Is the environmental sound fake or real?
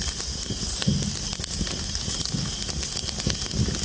real